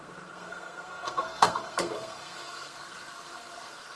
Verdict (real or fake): fake